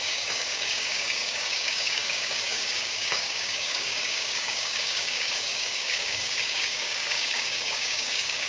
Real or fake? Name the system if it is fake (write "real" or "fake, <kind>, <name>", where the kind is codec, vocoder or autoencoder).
fake, codec, DAC